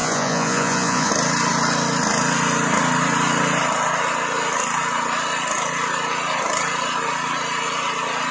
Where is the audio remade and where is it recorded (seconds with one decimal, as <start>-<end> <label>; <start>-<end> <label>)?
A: 0.0-1.1 remade; 1.1-8.3 recorded